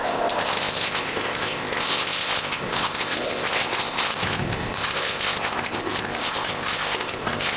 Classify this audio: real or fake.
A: fake